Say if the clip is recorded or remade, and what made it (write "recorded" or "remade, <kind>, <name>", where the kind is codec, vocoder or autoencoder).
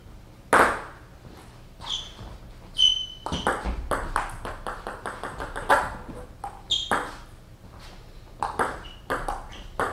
recorded